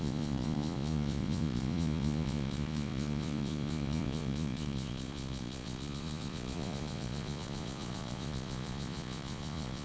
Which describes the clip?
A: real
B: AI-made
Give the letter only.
B